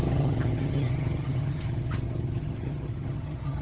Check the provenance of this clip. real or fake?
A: fake